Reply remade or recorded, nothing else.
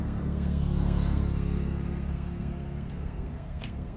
remade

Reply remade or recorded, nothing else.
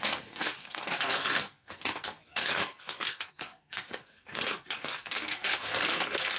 remade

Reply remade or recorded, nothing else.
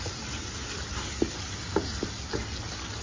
recorded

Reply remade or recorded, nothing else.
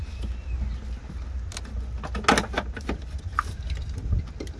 recorded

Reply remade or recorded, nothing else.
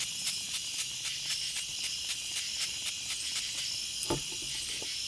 recorded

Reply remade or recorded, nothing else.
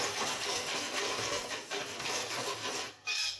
remade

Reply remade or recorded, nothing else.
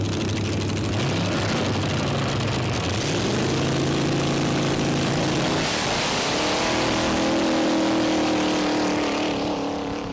recorded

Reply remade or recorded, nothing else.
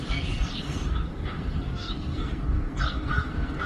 remade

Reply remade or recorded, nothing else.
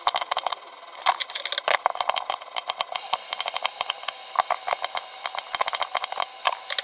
recorded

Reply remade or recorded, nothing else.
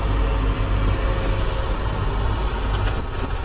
recorded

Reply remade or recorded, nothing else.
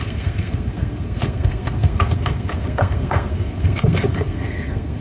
remade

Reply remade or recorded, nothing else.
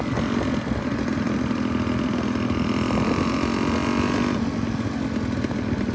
recorded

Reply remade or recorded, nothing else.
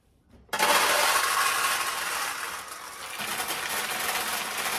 recorded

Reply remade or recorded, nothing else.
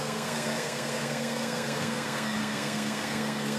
remade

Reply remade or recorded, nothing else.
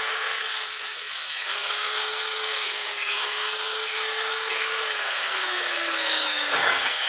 remade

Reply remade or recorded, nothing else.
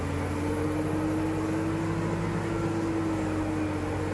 recorded